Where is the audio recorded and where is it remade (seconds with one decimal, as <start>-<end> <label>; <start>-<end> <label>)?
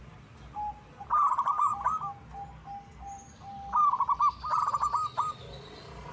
0.0-6.1 recorded